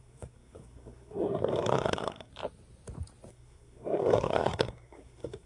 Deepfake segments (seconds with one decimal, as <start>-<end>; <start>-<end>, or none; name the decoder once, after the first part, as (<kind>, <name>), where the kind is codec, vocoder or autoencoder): 0.0-2.3 (codec, SNAC); 3.3-5.5